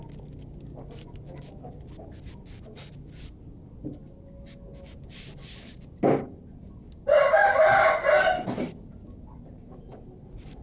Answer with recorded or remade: recorded